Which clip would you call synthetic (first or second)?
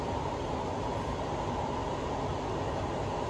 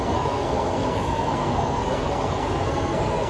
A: second